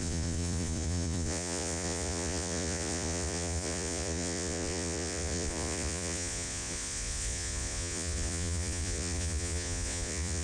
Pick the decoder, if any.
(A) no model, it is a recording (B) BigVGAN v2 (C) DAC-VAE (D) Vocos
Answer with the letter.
D